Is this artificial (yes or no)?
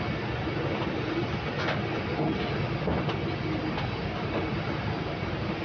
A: no